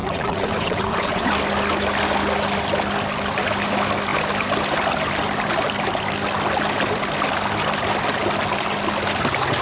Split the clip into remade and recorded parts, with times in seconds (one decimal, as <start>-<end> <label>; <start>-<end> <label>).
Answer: 0.0-1.3 remade; 1.3-9.6 recorded